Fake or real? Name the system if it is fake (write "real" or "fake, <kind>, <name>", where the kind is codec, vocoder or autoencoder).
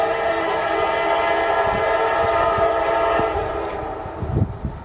fake, vocoder, BigVGAN v2